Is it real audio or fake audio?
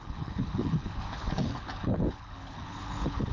fake